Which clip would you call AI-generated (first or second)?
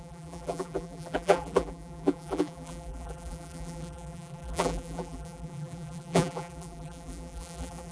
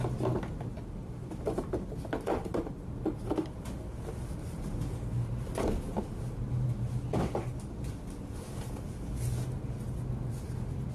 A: first